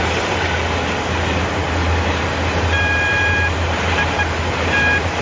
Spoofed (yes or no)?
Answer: no